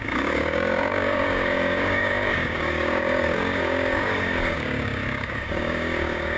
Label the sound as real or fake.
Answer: fake